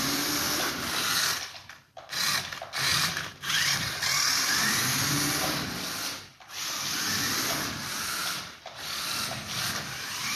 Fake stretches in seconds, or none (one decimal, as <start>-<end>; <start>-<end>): 2.9-4.1; 8.2-8.8